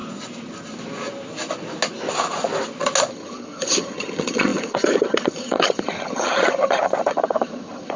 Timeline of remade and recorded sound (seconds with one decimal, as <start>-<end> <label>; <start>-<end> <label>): 0.0-3.1 recorded; 3.1-8.0 remade